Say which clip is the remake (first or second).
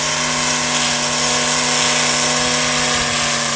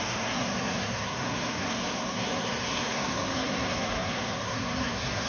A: second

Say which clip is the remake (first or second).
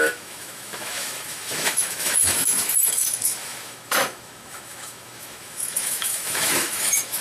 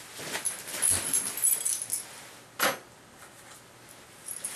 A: first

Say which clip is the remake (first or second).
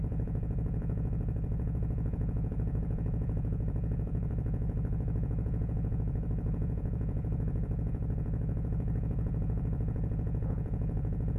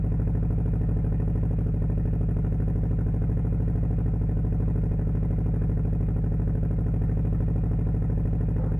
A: first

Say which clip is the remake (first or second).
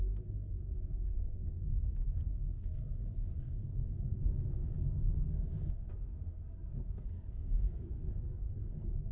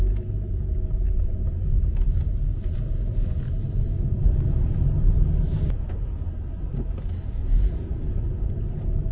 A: first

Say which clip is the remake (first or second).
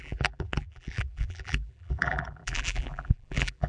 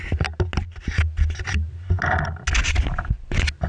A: first